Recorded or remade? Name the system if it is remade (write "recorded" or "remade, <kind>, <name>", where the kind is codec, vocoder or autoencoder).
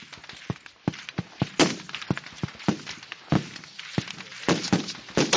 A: recorded